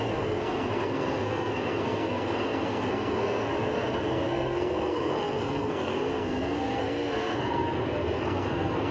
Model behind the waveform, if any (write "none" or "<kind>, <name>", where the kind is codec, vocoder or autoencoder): codec, SNAC